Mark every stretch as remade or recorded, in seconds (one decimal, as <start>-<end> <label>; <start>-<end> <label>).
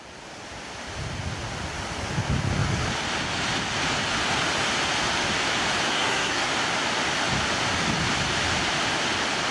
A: 0.0-5.9 recorded; 5.9-6.5 remade; 6.5-9.5 recorded